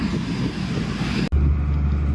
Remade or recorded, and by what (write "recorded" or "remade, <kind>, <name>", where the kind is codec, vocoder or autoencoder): recorded